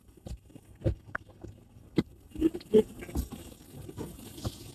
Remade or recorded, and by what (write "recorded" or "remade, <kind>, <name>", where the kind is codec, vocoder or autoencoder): recorded